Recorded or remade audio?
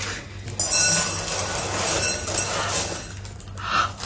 recorded